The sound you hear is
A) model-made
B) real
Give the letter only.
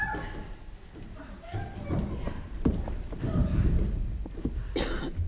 B